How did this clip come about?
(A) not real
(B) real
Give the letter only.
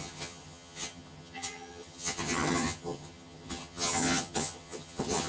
A